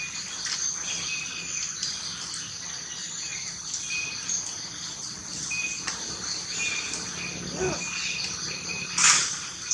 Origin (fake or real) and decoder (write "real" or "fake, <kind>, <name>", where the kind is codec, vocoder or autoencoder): real